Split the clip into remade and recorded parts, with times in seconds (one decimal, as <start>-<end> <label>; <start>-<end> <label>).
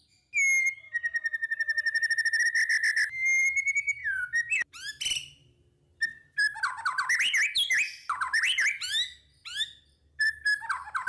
0.0-11.1 recorded